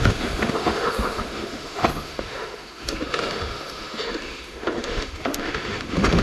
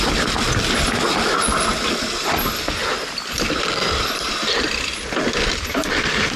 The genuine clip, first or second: second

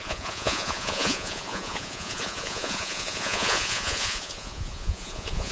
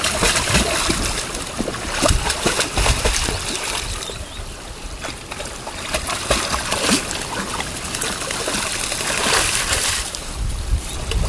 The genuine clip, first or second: second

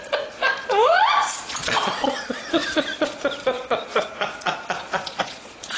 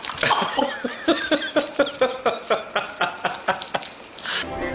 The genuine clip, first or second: second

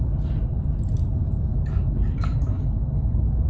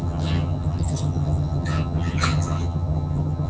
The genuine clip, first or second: first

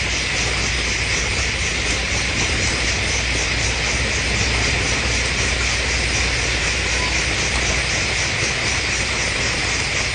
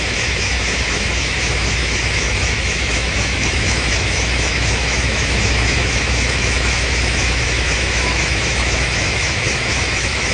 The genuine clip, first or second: first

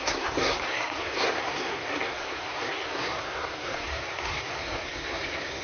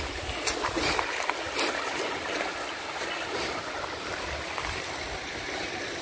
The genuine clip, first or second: second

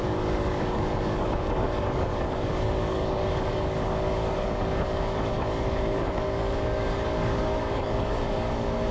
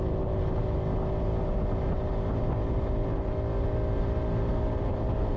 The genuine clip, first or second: second